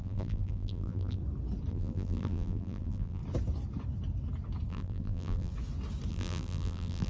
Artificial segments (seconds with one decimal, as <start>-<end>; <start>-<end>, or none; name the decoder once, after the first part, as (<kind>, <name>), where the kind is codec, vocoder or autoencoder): 0.0-1.2 (vocoder, BigVGAN v2); 1.7-3.2; 4.7-5.5; 6.1-7.1